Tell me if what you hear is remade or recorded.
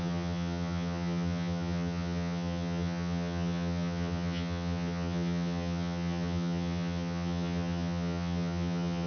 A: remade